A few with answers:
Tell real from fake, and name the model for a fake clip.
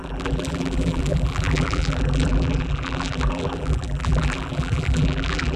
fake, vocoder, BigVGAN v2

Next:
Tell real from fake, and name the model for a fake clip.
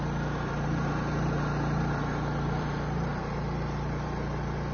fake, vocoder, BigVGAN v2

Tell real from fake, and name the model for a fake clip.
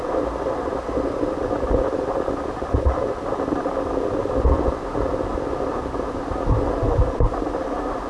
real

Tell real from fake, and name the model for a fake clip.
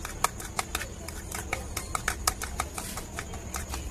real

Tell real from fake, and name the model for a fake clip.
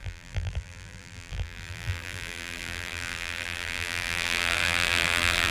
fake, vocoder, BigVGAN v2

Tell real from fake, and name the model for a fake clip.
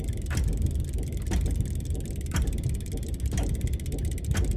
real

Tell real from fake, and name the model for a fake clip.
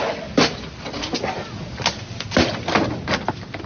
real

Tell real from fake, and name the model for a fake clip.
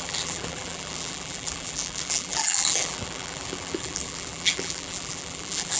fake, vocoder, BigVGAN v2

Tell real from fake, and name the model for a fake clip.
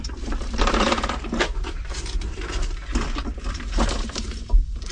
fake, vocoder, BigVGAN v2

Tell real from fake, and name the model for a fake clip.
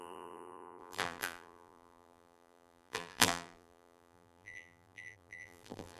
fake, vocoder, BigVGAN v2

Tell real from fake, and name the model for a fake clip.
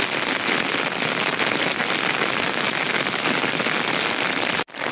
real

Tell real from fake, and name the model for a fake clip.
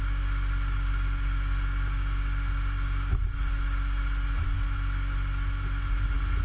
real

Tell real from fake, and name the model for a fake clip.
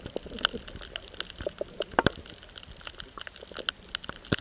real